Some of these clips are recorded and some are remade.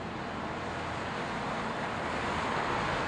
recorded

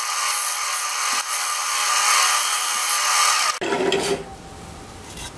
recorded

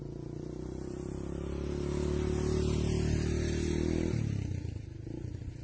recorded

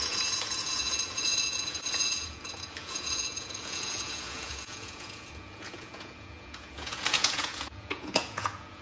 remade